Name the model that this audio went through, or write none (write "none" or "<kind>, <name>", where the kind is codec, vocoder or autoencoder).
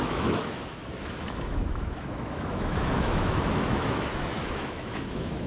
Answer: autoencoder, DAC-VAE